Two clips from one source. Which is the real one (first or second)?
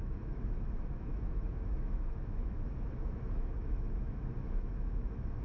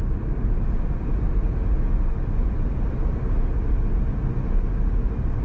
second